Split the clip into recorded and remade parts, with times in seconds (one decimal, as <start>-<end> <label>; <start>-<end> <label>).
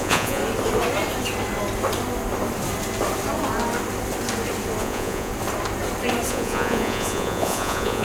0.0-0.4 remade; 0.4-4.8 recorded; 4.8-5.3 remade; 5.3-6.3 recorded; 6.3-8.0 remade